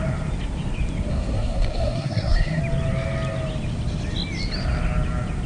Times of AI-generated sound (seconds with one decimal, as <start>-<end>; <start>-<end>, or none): 1.1-2.6